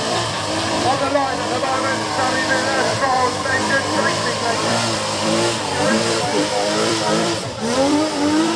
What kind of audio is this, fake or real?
fake